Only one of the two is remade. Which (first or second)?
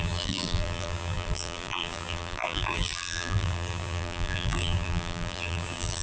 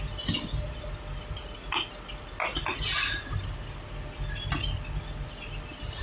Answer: first